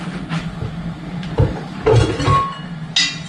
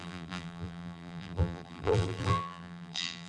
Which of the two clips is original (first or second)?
first